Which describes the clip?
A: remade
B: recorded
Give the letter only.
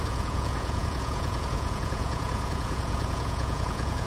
A